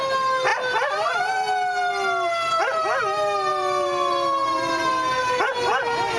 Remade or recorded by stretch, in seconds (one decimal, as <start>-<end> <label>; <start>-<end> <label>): 0.0-0.5 recorded; 0.5-1.9 remade; 1.9-3.5 recorded; 3.5-6.2 remade

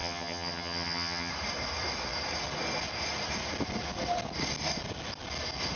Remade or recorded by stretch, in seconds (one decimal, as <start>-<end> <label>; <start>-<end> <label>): 0.0-1.3 remade; 1.3-5.8 recorded